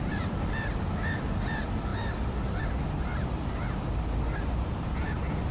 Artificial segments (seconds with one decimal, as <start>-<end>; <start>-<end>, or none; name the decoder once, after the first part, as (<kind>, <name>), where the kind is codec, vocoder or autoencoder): none